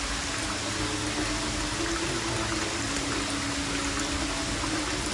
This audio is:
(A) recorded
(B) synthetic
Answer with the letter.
A